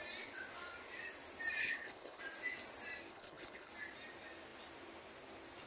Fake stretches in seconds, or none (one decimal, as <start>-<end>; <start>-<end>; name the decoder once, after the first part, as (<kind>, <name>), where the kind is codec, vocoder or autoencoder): 1.6-2.2 (codec, HILCodec); 3.1-3.7